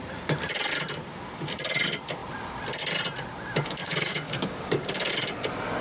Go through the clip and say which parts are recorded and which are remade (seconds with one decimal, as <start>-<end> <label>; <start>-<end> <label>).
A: 0.0-3.8 recorded; 3.8-5.1 remade; 5.1-5.8 recorded